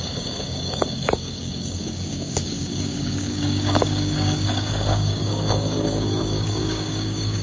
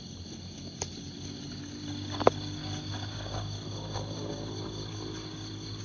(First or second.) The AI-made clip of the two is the first